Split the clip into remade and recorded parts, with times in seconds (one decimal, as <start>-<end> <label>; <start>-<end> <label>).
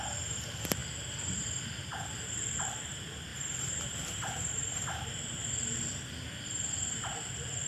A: 0.0-3.3 recorded; 3.3-4.4 remade; 4.4-7.7 recorded